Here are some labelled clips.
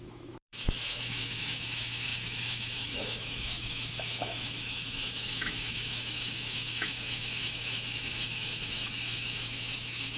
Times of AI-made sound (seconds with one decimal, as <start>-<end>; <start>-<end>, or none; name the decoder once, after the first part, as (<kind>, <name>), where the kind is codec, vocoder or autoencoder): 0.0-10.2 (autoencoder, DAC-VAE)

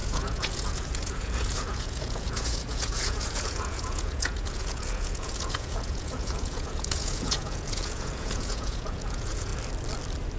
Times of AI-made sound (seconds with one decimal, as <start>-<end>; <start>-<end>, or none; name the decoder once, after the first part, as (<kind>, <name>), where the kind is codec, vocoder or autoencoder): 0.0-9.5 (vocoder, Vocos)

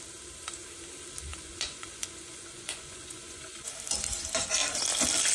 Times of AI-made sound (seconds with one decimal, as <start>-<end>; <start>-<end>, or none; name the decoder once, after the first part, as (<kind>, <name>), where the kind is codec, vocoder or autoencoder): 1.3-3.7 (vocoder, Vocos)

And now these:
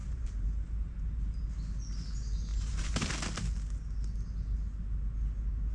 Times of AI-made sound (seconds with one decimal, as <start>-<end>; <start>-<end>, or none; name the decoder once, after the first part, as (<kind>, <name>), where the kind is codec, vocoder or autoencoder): 0.0-1.4 (vocoder, BigVGAN v2); 2.5-3.1

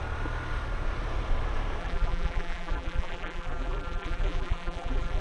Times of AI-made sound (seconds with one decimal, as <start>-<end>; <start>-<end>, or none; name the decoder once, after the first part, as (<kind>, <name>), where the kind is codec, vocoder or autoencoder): 1.8-5.2 (vocoder, BigVGAN v2)